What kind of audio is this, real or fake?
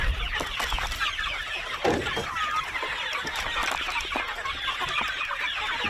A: real